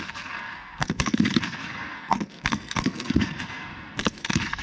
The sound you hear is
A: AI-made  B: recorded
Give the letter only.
A